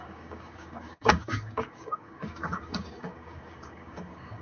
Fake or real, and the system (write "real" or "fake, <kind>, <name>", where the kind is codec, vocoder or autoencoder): fake, codec, DAC